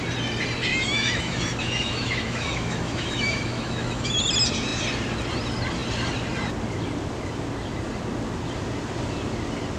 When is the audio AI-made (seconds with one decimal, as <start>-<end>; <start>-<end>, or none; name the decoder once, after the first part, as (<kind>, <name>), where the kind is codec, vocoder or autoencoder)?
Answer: 0.7-4.2 (autoencoder, DAC-VAE)